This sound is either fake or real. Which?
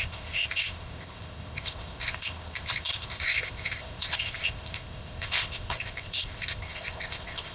fake